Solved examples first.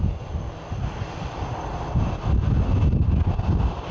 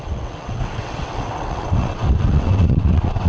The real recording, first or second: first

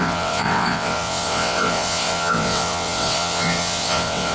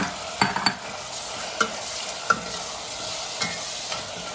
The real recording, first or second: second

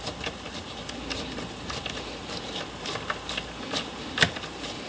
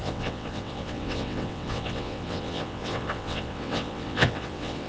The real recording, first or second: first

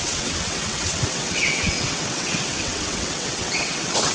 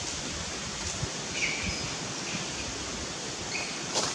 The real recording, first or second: second